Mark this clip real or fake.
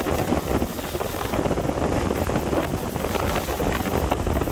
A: real